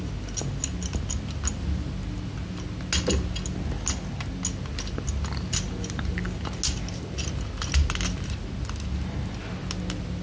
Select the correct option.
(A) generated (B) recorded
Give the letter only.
B